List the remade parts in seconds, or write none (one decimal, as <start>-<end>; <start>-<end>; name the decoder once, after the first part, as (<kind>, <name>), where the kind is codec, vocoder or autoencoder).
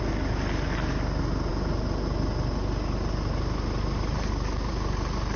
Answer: none